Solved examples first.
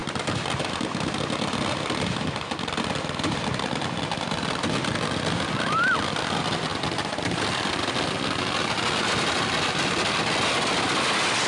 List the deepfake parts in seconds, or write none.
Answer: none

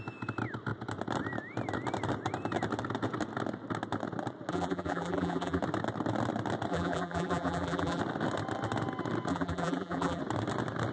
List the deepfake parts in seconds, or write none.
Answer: 4.5-5.6 (vocoder, BigVGAN v2); 6.7-8.0; 9.3-10.2

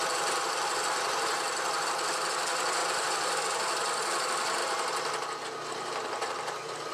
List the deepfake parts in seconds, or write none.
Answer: 0.0-1.8 (vocoder, BigVGAN v2); 2.8-3.4; 4.6-5.4

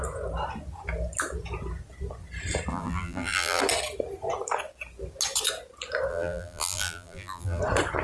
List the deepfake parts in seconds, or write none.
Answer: 2.7-3.6 (vocoder, BigVGAN v2); 6.1-7.6